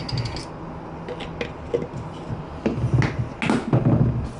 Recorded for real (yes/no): yes